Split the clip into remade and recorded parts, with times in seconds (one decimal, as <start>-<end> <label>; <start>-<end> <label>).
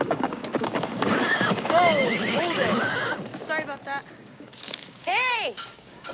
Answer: 0.0-3.3 remade; 3.3-4.1 recorded; 4.1-6.1 remade